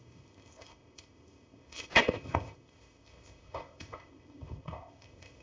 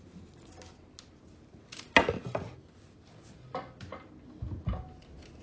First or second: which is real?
second